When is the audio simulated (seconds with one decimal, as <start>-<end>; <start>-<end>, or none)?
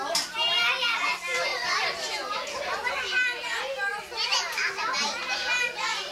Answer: 1.5-2.9; 5.4-6.1